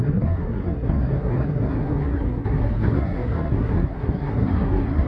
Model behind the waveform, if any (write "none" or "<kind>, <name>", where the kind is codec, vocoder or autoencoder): codec, SNAC